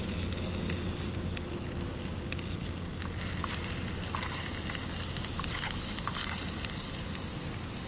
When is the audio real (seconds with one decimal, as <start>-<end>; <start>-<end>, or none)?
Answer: 0.0-7.9